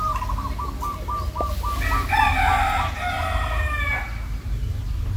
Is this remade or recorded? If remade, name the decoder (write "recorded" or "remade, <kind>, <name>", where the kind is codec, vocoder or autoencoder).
recorded